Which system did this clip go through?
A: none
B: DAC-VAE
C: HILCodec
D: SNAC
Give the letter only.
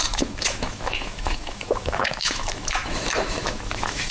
B